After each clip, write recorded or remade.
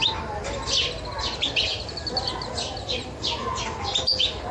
recorded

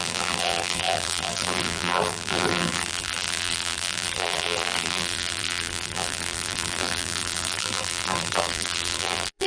remade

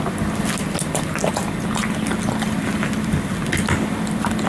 recorded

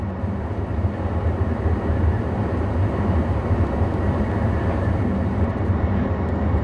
remade